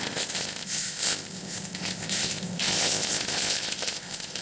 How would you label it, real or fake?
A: fake